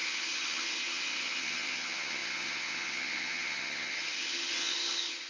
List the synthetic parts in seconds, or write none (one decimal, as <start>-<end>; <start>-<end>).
0.0-5.3